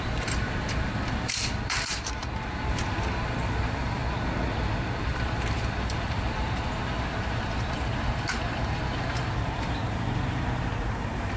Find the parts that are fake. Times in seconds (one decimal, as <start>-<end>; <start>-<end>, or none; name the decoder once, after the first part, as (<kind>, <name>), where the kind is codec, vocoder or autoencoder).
0.0-4.0 (vocoder, BigVGAN v2); 5.0-11.4

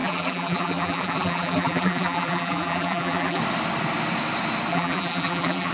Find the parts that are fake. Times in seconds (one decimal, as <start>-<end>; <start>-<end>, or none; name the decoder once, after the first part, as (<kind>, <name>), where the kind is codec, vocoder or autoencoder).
0.0-3.4 (vocoder, BigVGAN v2); 4.7-5.7

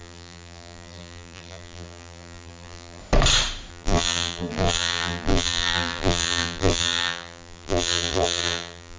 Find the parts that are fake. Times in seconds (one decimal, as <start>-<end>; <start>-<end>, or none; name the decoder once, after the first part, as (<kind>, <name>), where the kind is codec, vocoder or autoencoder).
0.0-3.0 (vocoder, BigVGAN v2); 3.7-9.0

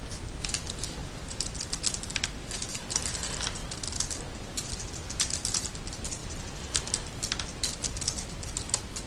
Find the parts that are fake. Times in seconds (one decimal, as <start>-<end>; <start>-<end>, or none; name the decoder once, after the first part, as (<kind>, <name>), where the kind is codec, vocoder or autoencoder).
1.0-2.2 (vocoder, BigVGAN v2); 3.6-4.2; 6.2-7.4

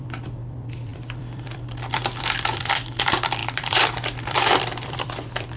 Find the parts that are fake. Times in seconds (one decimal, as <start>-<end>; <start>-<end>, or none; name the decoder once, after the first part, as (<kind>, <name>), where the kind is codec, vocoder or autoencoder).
0.0-5.6 (vocoder, BigVGAN v2)